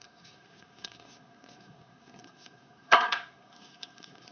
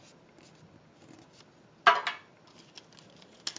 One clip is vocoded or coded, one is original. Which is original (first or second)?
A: second